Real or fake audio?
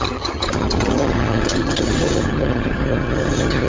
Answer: fake